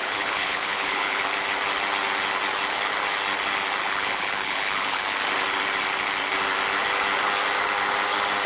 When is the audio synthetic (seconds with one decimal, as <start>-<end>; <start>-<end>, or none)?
0.0-1.2; 3.8-5.0